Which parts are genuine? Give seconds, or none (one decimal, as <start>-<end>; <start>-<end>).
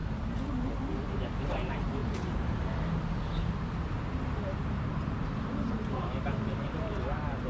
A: 0.0-1.1